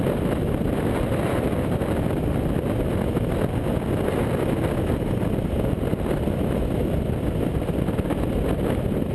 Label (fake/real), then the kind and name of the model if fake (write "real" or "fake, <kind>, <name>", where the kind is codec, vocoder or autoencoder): real